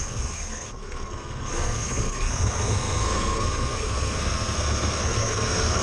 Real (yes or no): no